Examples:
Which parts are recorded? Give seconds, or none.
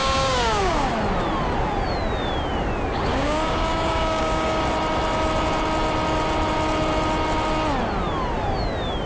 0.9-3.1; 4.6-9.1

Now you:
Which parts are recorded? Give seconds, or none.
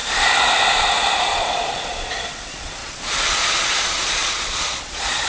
0.0-1.2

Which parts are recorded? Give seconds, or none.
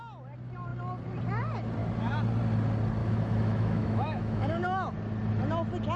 0.0-3.0; 4.9-6.0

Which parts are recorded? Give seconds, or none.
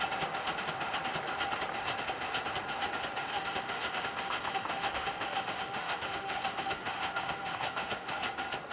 0.0-3.3; 8.2-8.7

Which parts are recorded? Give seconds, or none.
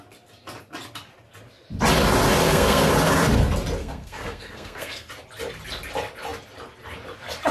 0.0-2.4; 2.9-3.8; 5.1-7.5